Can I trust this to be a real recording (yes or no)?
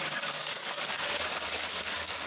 no